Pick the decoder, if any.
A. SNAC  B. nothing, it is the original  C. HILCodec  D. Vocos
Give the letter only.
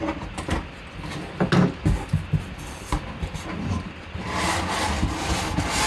B